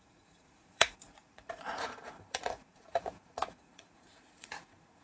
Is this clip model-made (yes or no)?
yes